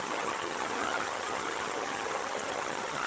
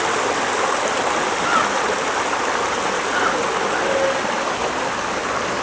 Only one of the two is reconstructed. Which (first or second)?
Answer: first